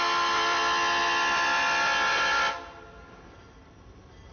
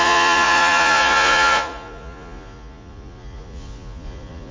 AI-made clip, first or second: second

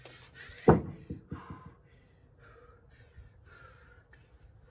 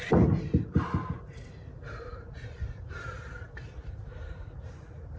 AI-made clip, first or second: second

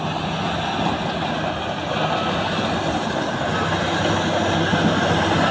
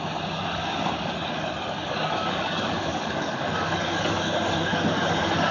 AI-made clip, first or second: second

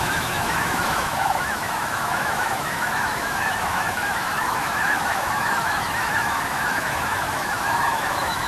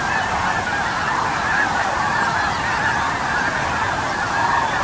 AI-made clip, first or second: first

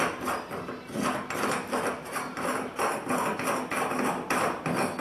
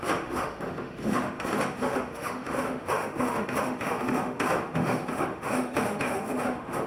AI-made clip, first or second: second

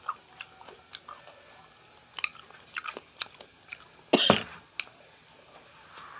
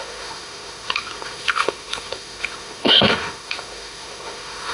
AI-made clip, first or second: second